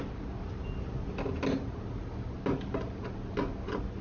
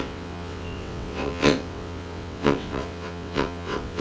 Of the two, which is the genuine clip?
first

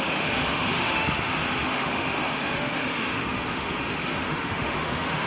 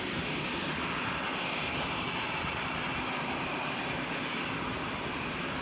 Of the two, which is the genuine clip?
second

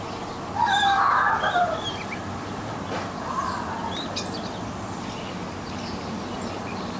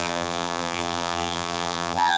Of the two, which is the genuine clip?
first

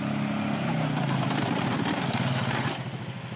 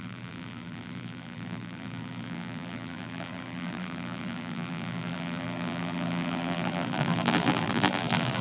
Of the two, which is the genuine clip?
first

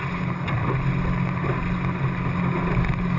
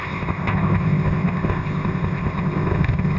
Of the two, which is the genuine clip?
first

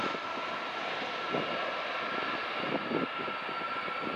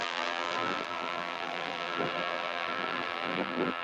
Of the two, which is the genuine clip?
first